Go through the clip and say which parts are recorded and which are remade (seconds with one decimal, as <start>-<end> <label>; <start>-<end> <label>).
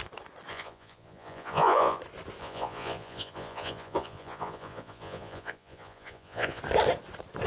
0.0-0.5 recorded; 0.5-2.0 remade; 2.0-2.4 recorded; 2.4-6.6 remade; 6.6-7.5 recorded